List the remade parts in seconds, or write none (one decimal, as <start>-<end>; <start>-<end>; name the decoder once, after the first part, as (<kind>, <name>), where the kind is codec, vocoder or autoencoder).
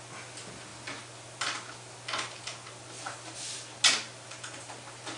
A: none